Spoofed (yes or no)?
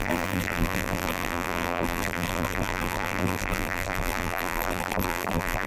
yes